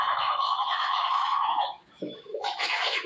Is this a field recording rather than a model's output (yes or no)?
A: no